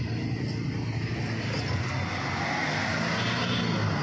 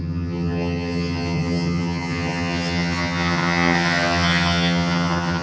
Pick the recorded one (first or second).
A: first